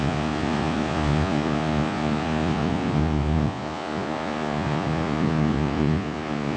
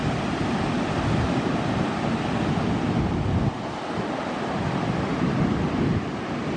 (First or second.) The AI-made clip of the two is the first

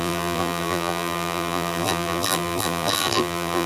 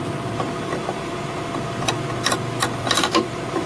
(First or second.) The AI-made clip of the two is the first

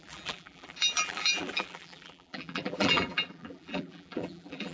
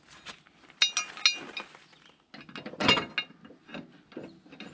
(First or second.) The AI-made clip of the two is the first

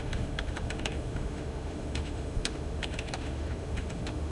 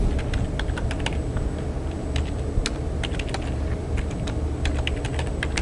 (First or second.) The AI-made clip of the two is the first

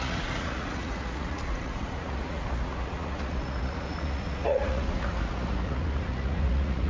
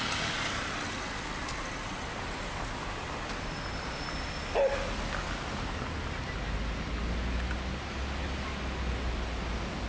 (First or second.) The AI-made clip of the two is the first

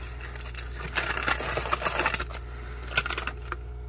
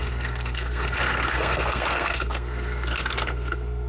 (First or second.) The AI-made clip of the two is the second